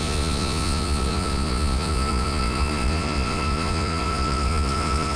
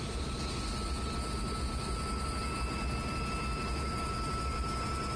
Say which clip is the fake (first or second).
first